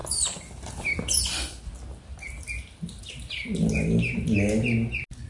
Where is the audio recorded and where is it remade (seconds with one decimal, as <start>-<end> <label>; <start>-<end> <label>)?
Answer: 0.0-5.3 recorded